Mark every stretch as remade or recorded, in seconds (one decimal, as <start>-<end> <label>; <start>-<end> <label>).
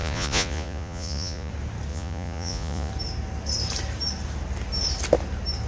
0.0-1.5 remade; 1.5-1.9 recorded; 1.9-2.9 remade; 2.9-5.7 recorded